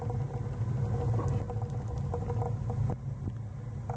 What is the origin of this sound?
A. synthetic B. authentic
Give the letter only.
B